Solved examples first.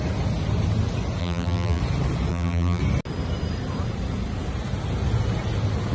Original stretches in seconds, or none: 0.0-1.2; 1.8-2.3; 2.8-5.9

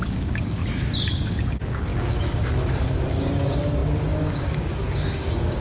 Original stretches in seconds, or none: 0.6-1.1

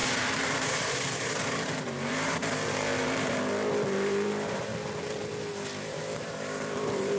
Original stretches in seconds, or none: 4.7-5.8

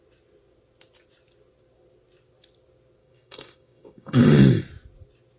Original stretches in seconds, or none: 0.0-3.0; 4.6-5.4